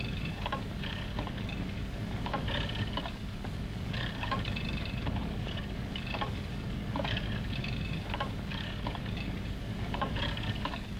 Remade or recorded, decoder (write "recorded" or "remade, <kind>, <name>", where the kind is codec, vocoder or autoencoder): remade, codec, DAC